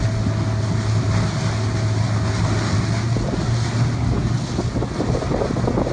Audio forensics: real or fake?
real